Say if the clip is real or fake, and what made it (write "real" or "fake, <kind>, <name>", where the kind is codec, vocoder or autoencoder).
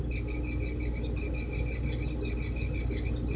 real